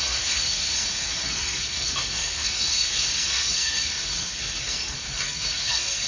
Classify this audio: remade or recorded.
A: remade